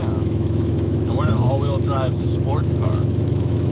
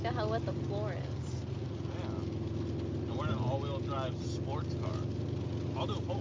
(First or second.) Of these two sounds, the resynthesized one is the first